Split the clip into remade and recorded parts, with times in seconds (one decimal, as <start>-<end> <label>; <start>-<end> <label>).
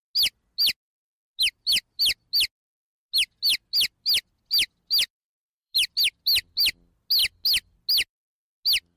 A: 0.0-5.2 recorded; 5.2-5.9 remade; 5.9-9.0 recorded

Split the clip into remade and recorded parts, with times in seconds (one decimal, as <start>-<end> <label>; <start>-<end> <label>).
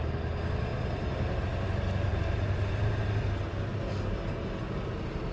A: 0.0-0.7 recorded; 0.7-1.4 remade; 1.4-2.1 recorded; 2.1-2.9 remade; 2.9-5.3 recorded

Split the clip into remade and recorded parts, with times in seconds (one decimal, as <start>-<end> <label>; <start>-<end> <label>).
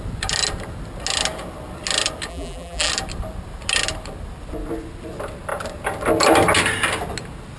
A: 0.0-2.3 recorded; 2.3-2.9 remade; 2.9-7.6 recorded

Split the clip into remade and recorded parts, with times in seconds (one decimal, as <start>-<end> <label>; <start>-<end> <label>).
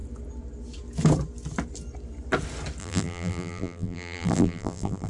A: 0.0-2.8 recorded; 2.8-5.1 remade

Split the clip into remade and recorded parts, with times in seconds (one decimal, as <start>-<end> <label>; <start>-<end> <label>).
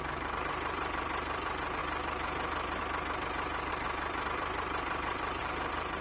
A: 0.0-1.8 remade; 1.8-3.7 recorded; 3.7-6.0 remade